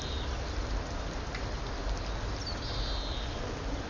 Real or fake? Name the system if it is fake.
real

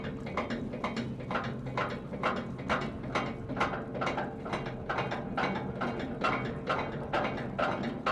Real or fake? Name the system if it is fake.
real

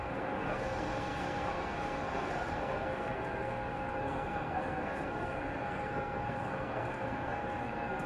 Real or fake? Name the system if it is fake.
fake, codec, SNAC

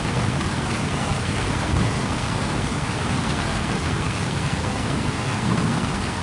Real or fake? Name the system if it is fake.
fake, codec, SNAC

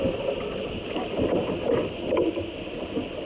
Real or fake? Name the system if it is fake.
real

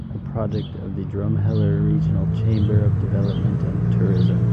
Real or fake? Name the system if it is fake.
real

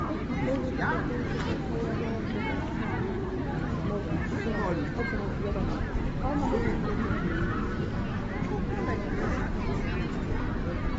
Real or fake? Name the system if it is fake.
real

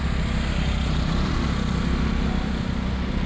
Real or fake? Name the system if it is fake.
real